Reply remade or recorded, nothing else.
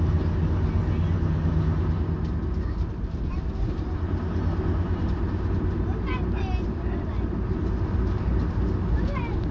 recorded